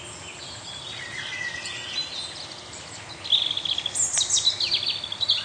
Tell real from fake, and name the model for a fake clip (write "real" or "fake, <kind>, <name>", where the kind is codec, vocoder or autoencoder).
real